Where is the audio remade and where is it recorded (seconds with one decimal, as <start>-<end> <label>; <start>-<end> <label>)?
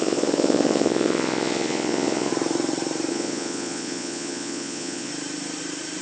0.0-2.3 remade; 2.3-3.1 recorded; 3.1-5.1 remade; 5.1-6.0 recorded